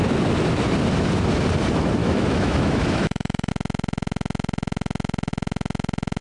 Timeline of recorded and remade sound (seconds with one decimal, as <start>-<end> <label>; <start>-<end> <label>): 0.0-2.0 recorded; 2.0-3.5 remade; 3.5-6.2 recorded